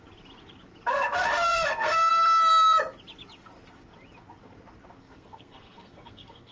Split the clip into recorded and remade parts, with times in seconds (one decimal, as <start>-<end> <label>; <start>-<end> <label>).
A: 0.0-0.9 recorded; 0.9-2.1 remade; 2.1-5.0 recorded; 5.0-6.5 remade